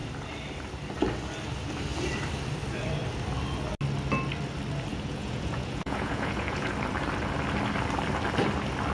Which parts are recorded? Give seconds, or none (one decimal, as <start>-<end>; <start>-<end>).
0.0-4.9; 6.7-8.9